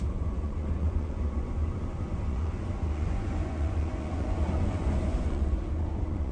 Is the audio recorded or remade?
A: remade